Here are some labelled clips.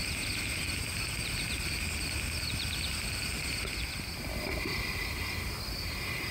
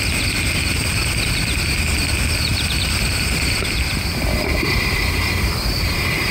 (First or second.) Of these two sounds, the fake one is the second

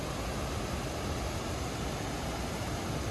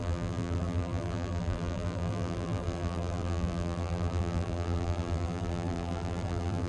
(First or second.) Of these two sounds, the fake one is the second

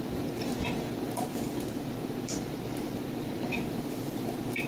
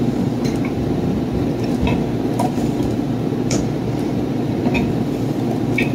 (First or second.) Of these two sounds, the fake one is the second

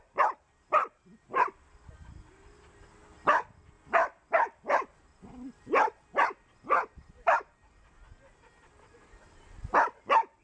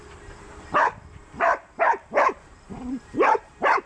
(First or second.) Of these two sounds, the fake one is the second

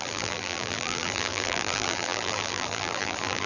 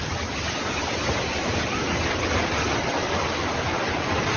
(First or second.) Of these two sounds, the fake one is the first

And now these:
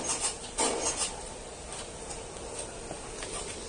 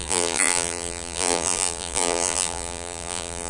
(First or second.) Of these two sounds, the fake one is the second